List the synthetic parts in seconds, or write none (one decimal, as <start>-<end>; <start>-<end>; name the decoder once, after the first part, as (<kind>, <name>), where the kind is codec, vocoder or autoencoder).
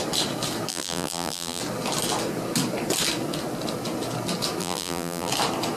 0.7-1.6 (vocoder, BigVGAN v2); 4.6-5.3